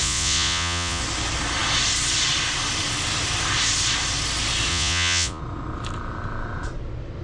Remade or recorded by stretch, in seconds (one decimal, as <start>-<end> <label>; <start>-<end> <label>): 0.0-1.0 remade; 1.0-4.7 recorded; 4.7-5.4 remade; 5.4-7.2 recorded